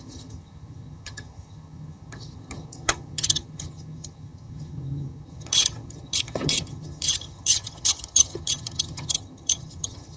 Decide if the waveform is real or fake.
fake